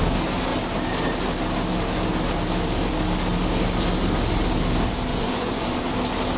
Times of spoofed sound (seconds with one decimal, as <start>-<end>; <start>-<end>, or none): 5.1-5.8